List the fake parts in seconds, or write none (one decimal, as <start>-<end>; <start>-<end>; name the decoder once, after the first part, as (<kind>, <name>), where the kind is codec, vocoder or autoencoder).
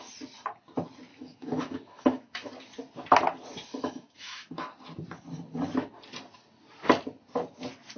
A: 1.1-2.5 (autoencoder, DAC-VAE); 3.7-4.5